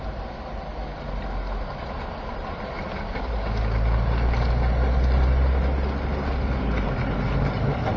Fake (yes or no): no